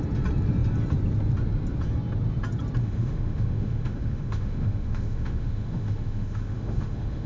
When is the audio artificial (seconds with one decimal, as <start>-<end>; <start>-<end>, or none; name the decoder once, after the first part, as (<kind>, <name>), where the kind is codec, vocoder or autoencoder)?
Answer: 2.8-7.3 (autoencoder, DAC-VAE)